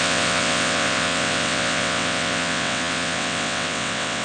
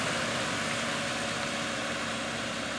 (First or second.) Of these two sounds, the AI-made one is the first